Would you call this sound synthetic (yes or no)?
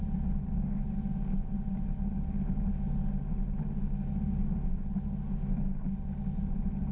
no